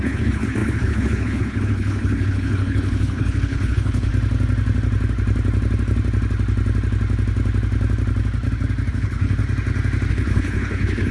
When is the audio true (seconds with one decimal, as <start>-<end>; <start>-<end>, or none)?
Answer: 4.1-8.9; 9.4-10.1